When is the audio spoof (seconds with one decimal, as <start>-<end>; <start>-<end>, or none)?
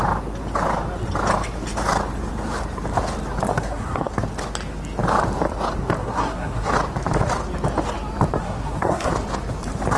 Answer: 3.5-4.1; 6.0-6.7; 8.4-9.1